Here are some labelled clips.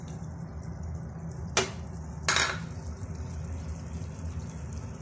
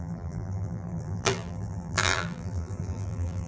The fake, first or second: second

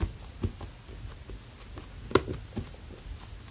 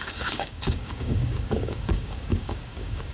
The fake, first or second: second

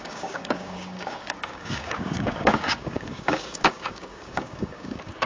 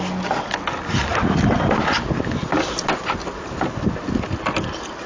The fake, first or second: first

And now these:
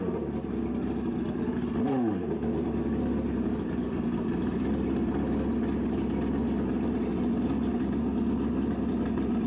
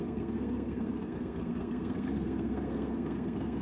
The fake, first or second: second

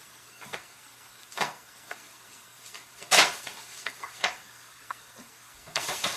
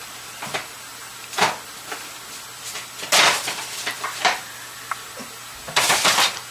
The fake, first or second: first